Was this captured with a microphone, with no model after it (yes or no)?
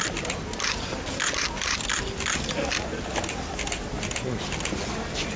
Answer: yes